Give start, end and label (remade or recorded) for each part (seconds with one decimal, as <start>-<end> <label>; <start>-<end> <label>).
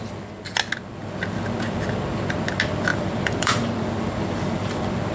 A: 0.0-2.9 recorded; 2.9-5.1 remade